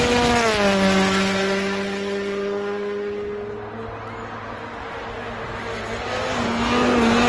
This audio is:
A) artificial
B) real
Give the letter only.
B